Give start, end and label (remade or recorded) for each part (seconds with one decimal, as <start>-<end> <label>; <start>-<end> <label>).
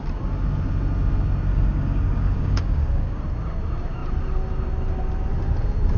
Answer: 0.0-1.5 recorded; 1.5-3.2 remade; 3.2-6.0 recorded